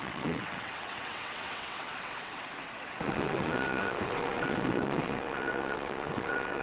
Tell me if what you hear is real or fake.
fake